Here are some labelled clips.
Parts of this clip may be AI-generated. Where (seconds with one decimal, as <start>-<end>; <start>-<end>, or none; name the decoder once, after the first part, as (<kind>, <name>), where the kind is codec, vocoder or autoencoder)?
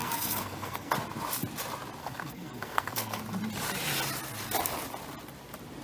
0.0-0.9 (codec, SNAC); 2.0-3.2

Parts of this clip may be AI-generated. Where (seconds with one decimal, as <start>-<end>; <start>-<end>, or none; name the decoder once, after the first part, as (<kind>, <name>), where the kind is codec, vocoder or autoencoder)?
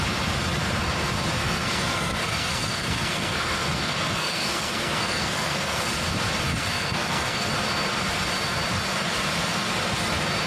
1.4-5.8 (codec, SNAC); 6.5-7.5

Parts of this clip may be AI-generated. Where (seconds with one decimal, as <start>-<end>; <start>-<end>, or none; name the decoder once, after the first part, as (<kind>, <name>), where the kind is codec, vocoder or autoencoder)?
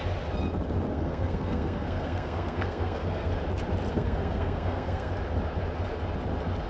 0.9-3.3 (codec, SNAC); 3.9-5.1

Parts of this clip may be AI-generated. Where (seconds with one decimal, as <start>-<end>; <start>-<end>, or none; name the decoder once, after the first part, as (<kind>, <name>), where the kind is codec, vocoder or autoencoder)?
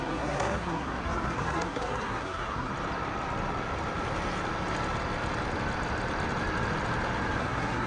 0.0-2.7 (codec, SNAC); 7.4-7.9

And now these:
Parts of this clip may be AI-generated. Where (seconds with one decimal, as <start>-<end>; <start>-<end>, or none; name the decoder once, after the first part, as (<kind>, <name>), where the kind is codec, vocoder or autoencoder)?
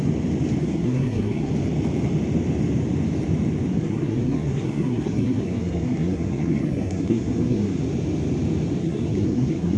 0.6-1.5 (codec, SNAC); 3.7-7.8; 8.8-9.8